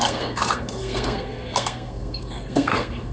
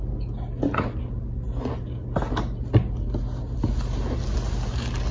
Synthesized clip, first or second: first